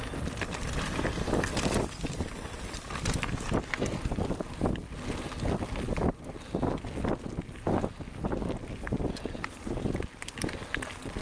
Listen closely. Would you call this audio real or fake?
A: real